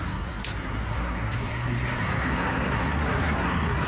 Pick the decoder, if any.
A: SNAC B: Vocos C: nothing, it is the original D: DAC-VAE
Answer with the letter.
A